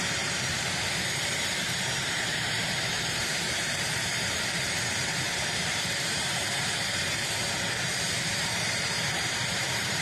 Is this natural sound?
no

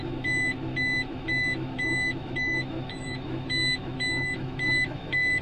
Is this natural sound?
no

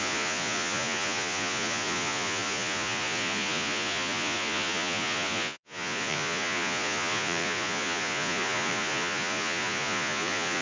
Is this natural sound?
no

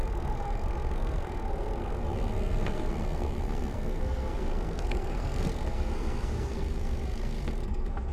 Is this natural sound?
no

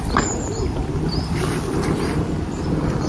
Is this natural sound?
no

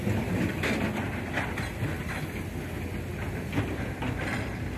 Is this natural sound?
yes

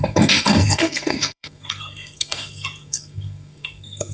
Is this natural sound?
no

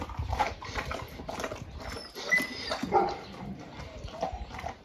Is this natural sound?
yes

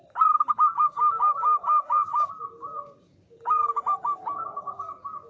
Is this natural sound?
no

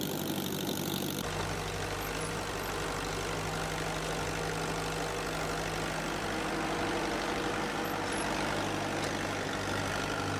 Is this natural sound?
yes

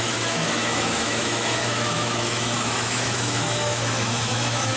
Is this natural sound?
no